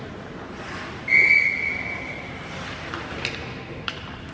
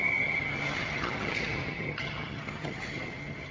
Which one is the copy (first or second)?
second